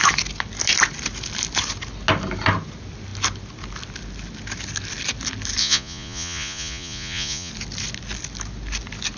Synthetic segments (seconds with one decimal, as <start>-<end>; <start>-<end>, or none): 5.6-7.5